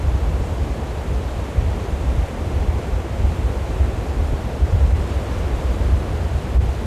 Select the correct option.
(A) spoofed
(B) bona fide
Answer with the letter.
B